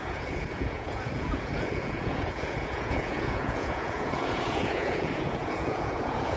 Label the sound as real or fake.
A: fake